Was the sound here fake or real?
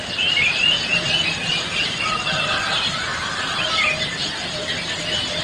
real